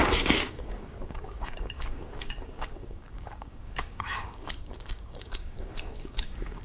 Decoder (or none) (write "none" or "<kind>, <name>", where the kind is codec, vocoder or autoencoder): codec, DAC